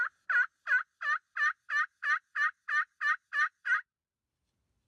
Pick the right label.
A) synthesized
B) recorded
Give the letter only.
B